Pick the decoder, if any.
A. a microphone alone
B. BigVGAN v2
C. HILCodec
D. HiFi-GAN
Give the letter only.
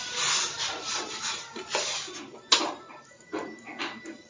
B